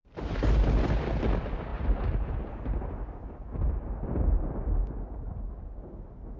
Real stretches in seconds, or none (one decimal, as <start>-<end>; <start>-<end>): 0.0-6.4